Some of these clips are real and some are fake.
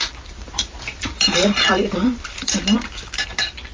fake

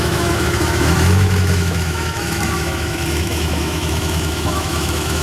fake